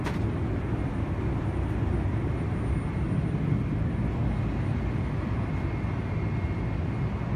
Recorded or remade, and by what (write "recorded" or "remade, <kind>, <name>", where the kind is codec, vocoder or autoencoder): recorded